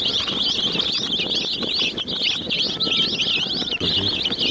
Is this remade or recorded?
recorded